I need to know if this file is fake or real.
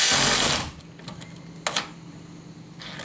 real